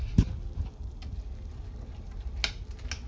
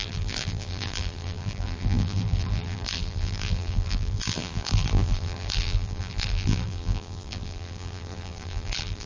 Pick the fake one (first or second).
second